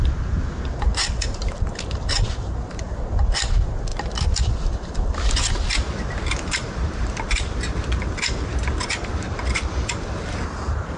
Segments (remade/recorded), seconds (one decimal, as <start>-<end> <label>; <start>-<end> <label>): 0.0-11.0 recorded